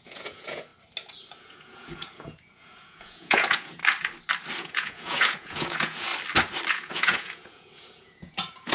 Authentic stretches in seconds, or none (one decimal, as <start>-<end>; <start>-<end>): 0.7-1.4; 3.8-4.6; 6.1-6.7